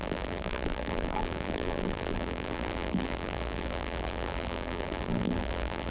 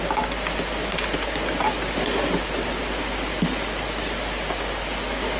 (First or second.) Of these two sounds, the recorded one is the second